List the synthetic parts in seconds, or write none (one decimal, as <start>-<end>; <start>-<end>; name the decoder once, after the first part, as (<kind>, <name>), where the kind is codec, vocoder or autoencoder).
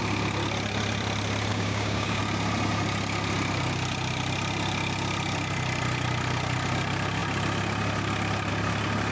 1.5-2.2 (codec, DAC)